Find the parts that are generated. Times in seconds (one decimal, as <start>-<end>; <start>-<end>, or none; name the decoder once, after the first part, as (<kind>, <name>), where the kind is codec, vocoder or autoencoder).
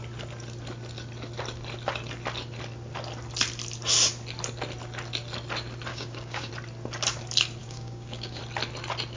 5.9-6.5 (codec, DAC); 7.6-8.4